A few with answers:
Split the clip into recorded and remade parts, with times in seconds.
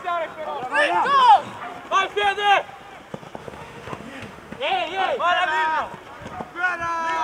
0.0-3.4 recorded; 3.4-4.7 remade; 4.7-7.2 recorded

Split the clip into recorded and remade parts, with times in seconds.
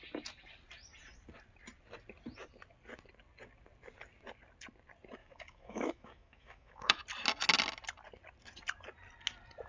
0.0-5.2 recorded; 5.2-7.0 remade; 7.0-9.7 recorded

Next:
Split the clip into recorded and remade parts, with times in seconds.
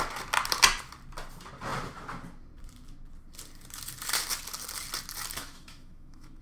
0.0-5.4 recorded; 5.4-6.4 remade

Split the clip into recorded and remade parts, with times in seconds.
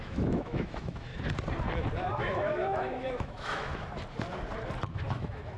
0.0-1.1 remade; 1.1-2.2 recorded; 2.2-3.7 remade; 3.7-4.9 recorded; 4.9-5.6 remade